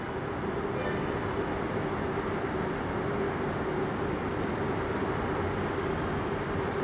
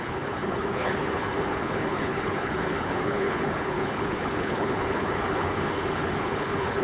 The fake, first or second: second